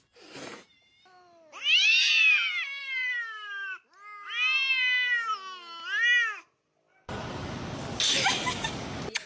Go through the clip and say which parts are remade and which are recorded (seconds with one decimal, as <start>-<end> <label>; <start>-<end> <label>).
0.0-2.8 recorded; 2.8-3.7 remade; 3.7-9.3 recorded